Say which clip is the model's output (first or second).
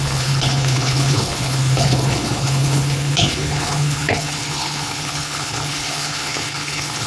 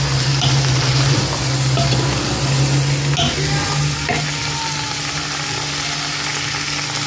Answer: first